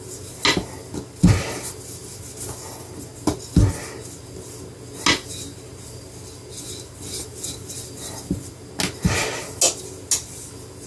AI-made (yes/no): no